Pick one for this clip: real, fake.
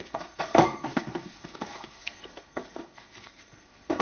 fake